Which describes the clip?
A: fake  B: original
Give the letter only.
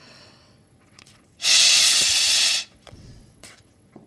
A